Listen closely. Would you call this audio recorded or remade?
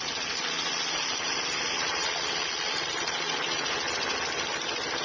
recorded